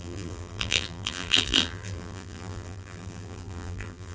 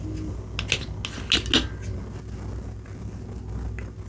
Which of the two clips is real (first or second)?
second